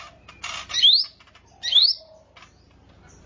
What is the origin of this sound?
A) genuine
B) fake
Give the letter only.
A